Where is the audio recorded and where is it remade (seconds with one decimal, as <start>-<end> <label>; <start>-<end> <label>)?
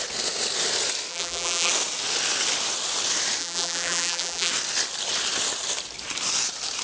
0.0-1.1 recorded; 1.1-1.7 remade; 1.7-3.4 recorded; 3.4-4.5 remade; 4.5-6.8 recorded